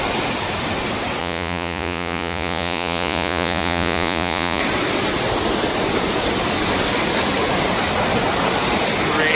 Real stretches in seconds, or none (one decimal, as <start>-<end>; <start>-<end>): 0.0-1.2; 4.6-9.3